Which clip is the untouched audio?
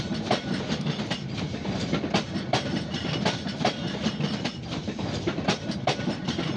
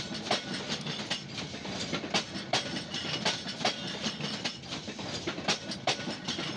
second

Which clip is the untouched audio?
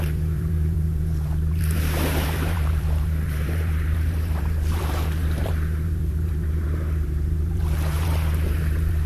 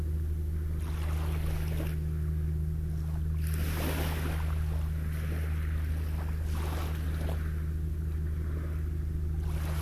second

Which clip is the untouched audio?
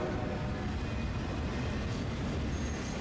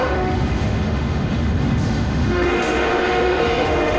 first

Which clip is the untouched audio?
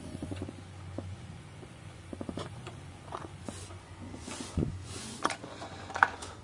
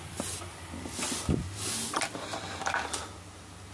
second